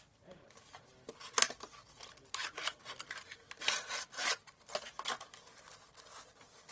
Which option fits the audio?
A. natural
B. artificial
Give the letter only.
A